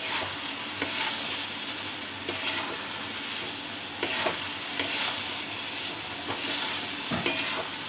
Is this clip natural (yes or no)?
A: yes